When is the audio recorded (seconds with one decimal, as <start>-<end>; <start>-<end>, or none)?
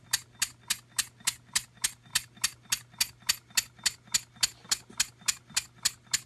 0.0-6.3